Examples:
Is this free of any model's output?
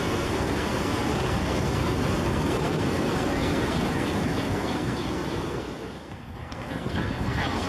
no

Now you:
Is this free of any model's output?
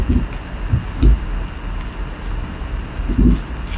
yes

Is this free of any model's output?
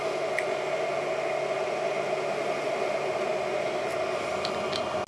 yes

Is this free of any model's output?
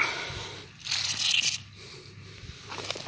yes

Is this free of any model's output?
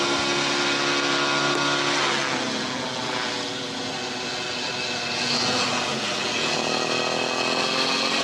yes